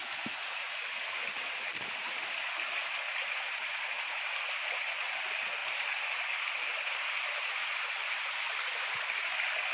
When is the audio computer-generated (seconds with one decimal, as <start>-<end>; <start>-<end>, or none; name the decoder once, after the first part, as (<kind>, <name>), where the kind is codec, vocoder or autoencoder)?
none